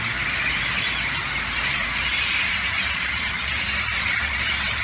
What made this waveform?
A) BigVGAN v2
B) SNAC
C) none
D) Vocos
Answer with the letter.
A